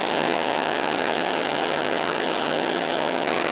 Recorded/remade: remade